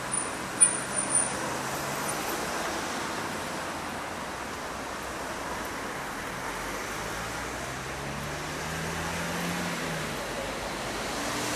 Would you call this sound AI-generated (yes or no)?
no